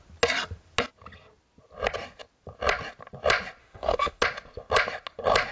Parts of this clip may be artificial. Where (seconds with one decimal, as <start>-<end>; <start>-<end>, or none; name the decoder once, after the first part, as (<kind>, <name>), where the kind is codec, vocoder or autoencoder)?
3.6-4.2 (autoencoder, DAC-VAE)